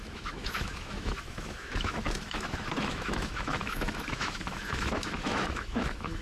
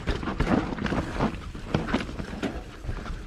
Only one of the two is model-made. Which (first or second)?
first